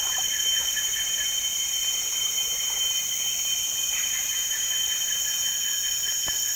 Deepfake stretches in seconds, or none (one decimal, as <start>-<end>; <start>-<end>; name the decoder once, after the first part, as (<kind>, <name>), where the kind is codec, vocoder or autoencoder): 4.4-5.2 (vocoder, BigVGAN v2)